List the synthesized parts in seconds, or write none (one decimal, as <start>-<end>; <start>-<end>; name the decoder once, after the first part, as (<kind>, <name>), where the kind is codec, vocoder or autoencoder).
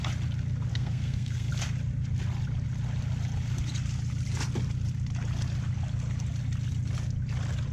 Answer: 0.7-1.5 (codec, SNAC)